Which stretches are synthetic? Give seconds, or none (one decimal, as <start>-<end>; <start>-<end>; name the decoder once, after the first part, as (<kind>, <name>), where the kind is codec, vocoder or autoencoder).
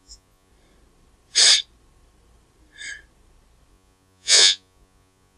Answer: 0.0-0.5 (vocoder, Vocos); 3.7-5.4